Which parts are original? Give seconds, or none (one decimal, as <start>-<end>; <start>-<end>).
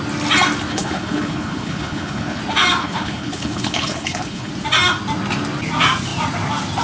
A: 0.0-0.7; 2.4-2.8; 4.5-6.8